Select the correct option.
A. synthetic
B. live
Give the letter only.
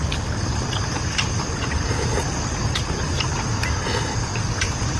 B